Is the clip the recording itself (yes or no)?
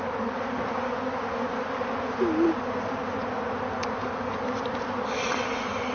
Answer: yes